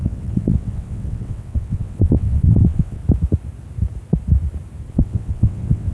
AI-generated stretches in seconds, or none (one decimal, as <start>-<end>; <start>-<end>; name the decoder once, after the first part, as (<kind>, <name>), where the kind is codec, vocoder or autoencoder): 0.0-3.0 (vocoder, WaveNeXt); 4.9-5.9